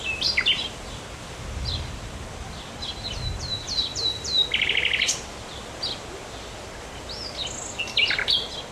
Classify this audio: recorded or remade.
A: recorded